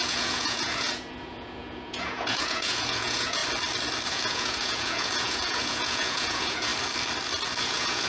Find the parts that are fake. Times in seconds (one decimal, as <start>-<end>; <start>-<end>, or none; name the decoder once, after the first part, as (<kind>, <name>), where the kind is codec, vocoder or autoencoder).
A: 0.0-3.4 (vocoder, Vocos); 4.1-6.7; 7.6-8.1